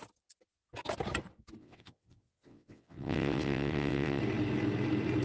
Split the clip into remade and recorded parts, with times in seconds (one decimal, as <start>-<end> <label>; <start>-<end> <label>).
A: 0.0-1.6 recorded; 1.6-4.2 remade; 4.2-5.2 recorded